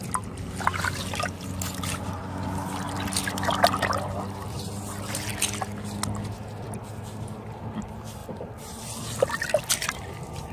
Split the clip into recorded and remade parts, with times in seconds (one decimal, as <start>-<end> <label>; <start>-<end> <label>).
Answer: 0.0-8.2 recorded; 8.2-9.6 remade; 9.6-10.5 recorded